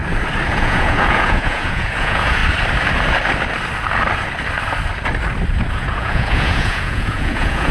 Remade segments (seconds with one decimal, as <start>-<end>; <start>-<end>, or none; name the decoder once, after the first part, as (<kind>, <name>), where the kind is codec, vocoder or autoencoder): 0.5-2.4 (vocoder, Vocos); 5.7-7.7